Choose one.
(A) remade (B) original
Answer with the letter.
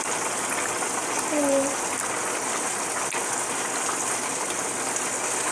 B